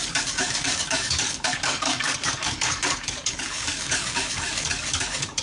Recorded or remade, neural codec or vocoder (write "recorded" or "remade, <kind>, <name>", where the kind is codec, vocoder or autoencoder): remade, codec, DAC